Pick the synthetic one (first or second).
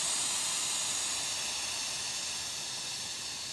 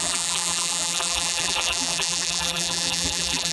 second